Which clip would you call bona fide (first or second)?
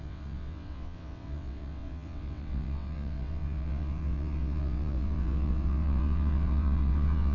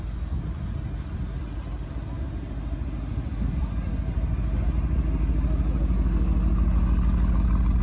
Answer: second